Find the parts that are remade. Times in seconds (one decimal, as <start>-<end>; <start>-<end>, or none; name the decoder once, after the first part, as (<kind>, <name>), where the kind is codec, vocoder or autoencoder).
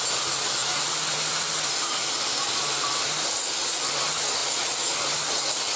none